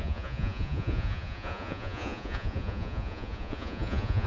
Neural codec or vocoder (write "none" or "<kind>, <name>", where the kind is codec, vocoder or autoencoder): vocoder, Vocos